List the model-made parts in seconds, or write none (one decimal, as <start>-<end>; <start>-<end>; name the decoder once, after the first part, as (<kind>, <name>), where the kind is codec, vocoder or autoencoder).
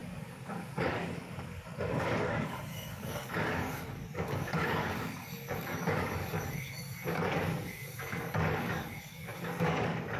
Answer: 0.0-10.2 (codec, DAC)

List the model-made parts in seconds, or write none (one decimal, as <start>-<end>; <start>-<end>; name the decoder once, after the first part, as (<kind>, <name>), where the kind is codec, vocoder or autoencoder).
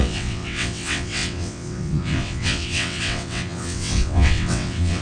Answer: 0.0-5.0 (vocoder, WaveNeXt)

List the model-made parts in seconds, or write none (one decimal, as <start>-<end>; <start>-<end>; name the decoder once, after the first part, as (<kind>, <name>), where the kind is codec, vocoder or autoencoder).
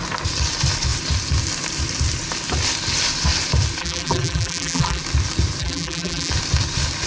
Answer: 3.8-5.0 (vocoder, BigVGAN v2); 5.6-6.3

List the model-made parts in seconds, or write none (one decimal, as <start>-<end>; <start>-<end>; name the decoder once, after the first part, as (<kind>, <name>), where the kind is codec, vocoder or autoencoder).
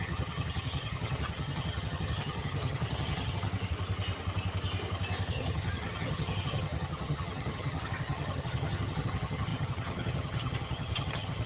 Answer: 0.0-3.5 (vocoder, HiFi-GAN); 5.3-11.5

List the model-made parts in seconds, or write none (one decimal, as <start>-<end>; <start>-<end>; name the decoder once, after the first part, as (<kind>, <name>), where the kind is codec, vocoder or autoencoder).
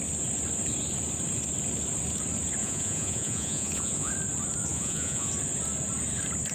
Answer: 2.6-4.1 (vocoder, Vocos); 4.7-5.3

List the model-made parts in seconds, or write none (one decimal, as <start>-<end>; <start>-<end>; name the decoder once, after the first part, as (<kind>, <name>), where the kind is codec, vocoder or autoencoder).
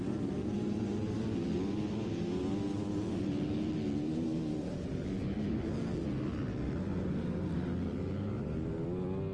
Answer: none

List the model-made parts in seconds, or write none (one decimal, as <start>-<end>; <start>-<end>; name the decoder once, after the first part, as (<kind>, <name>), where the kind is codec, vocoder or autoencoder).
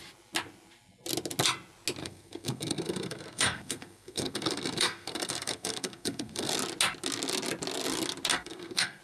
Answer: 2.0-6.5 (codec, SNAC); 8.3-9.0